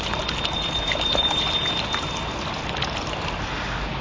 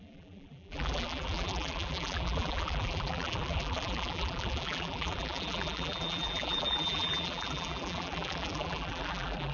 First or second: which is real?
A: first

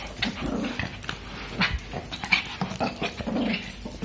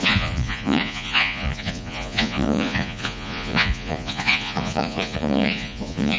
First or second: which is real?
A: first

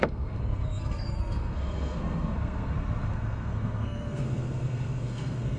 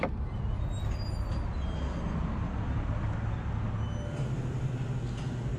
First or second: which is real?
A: second